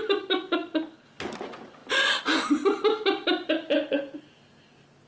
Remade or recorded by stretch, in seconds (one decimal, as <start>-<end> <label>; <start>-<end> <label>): 0.0-5.1 recorded